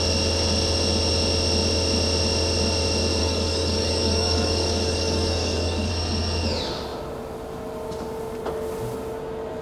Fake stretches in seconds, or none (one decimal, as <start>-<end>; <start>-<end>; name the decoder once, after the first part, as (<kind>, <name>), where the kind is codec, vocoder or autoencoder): 3.2-5.9 (codec, DAC)